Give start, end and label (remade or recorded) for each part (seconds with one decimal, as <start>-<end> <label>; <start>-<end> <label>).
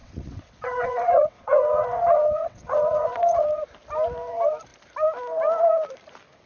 0.0-3.6 remade; 3.6-6.5 recorded